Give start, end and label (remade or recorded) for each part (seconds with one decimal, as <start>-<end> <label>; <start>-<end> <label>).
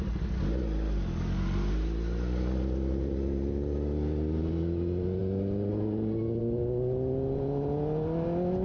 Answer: 0.0-8.6 recorded